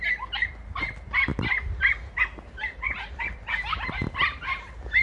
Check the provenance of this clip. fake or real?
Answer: real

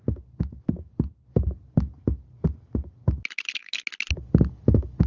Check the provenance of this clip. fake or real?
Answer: real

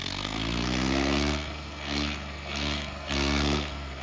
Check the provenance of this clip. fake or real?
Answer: fake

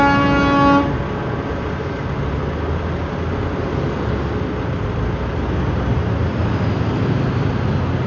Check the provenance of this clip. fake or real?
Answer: real